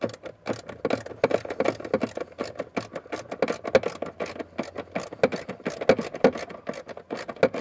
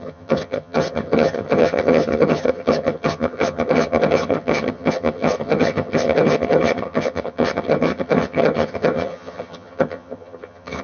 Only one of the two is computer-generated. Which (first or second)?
second